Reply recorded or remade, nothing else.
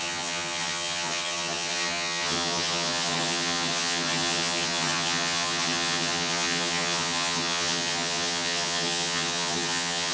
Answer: remade